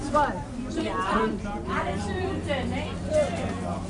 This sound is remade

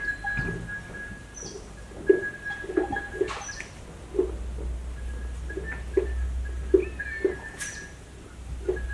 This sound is recorded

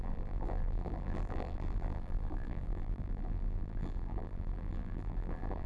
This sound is remade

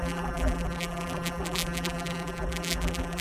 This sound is remade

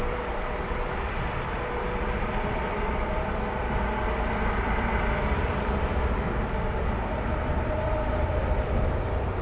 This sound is remade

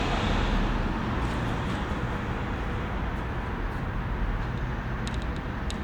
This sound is recorded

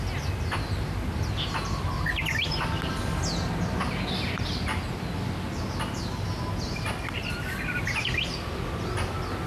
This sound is recorded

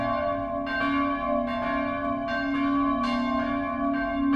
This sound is recorded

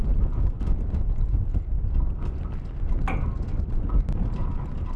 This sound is recorded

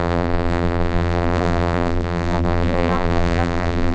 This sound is remade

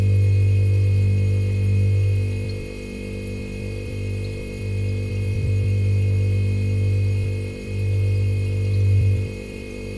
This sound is remade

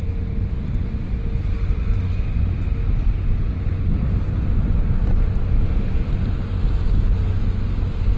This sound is recorded